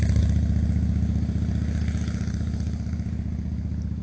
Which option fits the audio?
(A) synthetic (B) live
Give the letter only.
B